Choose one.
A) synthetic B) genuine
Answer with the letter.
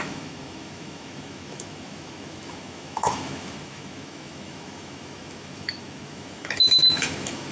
A